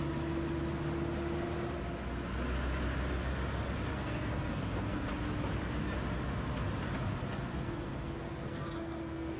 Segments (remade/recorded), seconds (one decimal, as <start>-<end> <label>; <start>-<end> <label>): 0.0-3.9 recorded; 3.9-5.1 remade; 5.1-7.5 recorded; 7.5-9.4 remade